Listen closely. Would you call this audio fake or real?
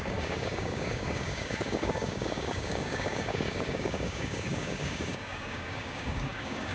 fake